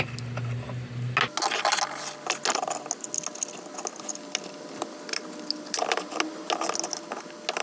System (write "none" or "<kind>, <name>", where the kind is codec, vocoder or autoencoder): none